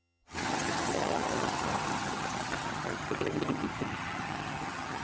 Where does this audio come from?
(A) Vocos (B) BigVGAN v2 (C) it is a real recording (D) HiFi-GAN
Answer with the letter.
D